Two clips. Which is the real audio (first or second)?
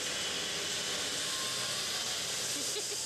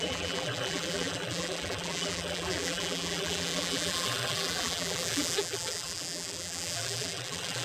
first